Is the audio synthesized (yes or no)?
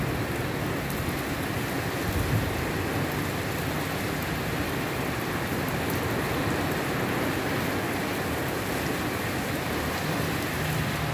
no